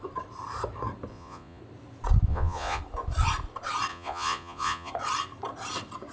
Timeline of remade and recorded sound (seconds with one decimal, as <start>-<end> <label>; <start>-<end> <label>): 0.0-1.1 recorded; 1.1-1.6 remade; 1.6-2.3 recorded; 2.3-2.8 remade; 2.8-3.9 recorded; 3.9-4.9 remade; 4.9-6.1 recorded